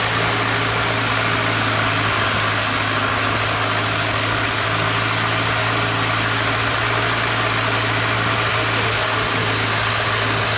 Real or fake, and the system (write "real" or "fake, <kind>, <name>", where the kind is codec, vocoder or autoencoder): real